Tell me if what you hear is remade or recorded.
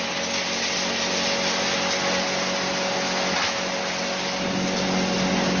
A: recorded